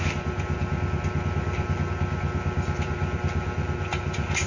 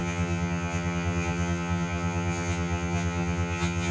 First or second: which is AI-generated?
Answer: second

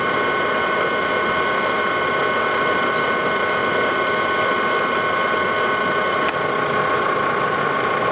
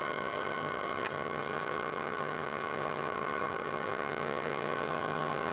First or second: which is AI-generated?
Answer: second